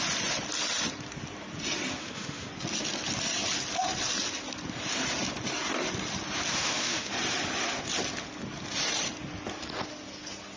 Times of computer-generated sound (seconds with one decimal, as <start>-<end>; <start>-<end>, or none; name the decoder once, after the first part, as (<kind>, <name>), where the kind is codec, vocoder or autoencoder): 2.0-2.5 (autoencoder, DAC-VAE); 6.5-7.1